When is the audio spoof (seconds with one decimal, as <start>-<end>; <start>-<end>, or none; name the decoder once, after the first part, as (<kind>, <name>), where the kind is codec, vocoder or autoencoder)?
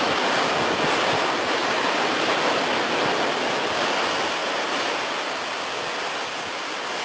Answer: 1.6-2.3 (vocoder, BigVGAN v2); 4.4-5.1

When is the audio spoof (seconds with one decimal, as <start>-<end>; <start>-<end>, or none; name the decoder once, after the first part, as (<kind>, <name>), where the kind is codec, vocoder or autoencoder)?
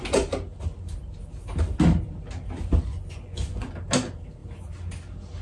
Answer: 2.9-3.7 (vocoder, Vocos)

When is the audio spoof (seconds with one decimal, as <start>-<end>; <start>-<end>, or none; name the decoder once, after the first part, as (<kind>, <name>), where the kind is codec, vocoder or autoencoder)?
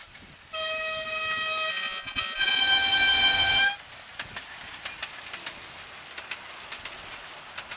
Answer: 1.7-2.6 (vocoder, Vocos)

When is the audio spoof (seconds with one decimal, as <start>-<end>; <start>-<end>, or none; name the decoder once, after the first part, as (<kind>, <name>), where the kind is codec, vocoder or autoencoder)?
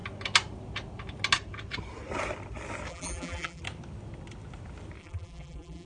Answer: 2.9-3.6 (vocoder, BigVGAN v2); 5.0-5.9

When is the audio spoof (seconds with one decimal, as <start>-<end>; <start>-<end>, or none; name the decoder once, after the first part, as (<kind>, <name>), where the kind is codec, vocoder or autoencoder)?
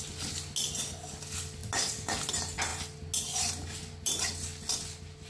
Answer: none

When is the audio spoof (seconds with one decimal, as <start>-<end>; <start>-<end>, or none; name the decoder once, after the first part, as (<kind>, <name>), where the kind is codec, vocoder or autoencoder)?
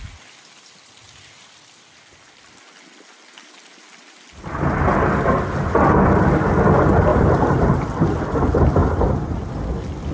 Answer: 7.1-7.9 (vocoder, BigVGAN v2); 8.8-9.5